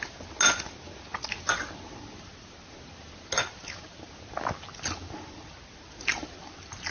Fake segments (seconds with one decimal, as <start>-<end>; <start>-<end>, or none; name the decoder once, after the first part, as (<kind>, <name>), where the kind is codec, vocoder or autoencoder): none